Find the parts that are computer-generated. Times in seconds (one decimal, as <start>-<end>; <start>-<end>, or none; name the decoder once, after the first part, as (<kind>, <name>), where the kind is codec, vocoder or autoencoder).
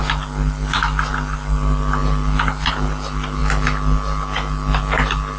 none